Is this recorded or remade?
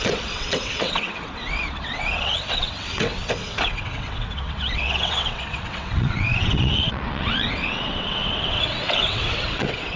remade